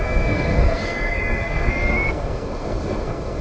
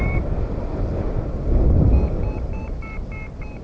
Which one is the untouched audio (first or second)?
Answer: second